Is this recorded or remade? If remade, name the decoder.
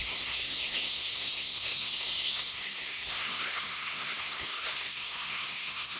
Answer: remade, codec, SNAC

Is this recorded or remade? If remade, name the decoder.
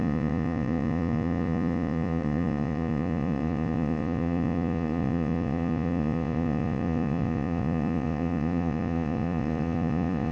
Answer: remade, vocoder, Vocos